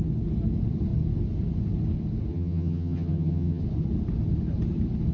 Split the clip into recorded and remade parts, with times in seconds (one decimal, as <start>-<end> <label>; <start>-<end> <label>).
0.0-2.3 recorded; 2.3-3.6 remade; 3.6-5.1 recorded